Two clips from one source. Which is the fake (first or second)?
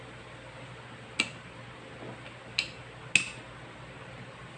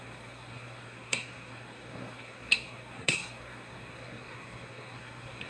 second